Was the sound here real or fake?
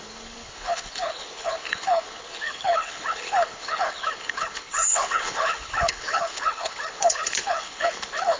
fake